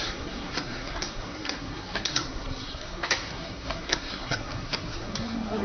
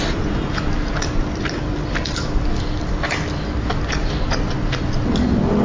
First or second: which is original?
second